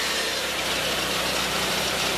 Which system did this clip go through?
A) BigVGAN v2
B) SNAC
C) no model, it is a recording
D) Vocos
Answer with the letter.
A